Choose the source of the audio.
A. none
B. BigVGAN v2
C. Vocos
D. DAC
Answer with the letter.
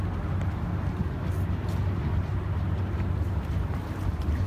A